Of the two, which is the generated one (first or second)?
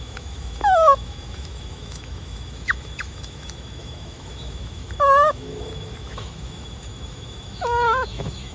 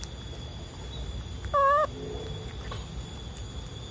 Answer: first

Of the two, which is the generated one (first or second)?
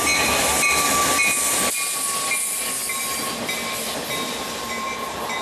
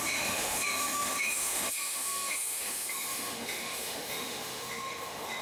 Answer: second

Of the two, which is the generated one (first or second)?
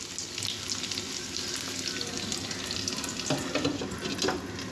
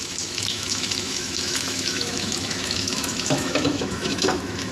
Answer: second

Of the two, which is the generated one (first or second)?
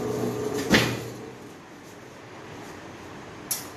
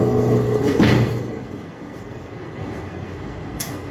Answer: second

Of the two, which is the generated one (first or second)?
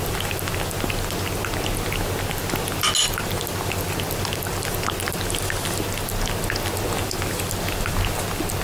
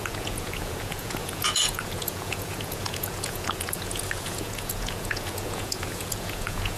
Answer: second